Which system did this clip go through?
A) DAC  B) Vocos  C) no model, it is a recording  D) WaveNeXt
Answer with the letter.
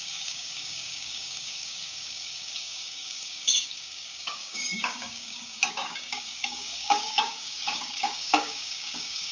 A